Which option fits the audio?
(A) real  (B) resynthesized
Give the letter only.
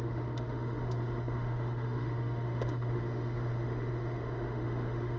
B